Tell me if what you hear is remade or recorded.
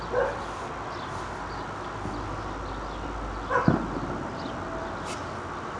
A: recorded